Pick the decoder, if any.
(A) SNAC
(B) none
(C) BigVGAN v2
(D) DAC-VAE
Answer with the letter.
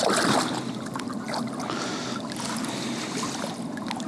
B